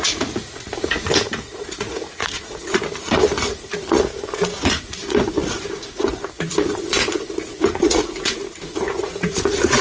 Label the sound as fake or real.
fake